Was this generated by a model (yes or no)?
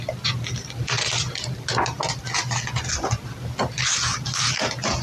no